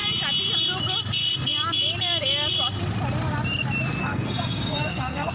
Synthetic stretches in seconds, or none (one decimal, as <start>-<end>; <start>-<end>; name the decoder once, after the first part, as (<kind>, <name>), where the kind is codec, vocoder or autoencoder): 4.0-5.3 (codec, SNAC)